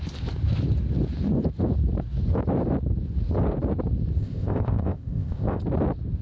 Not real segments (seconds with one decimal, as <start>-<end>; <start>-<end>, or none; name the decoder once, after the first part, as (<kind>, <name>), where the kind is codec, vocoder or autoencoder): 4.2-5.6 (codec, ZipCodec)